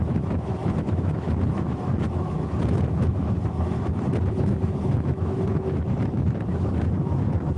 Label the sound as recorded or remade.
remade